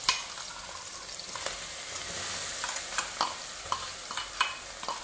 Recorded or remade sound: recorded